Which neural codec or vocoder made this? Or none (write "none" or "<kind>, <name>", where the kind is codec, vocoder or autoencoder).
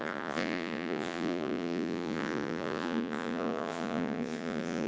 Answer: vocoder, Vocos